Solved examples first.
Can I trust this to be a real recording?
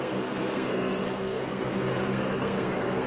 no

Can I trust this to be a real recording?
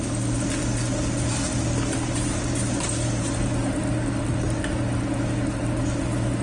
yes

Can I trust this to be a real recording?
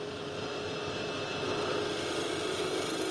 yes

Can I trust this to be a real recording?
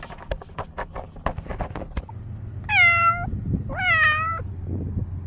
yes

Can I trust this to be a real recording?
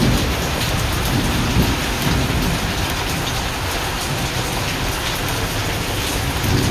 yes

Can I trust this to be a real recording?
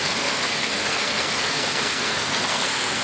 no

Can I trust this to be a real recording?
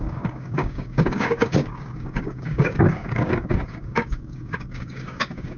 no